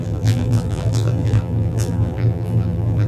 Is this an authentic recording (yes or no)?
no